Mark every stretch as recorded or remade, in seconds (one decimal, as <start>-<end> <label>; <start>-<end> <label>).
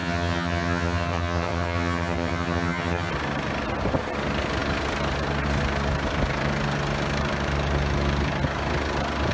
0.0-3.1 remade; 3.1-9.3 recorded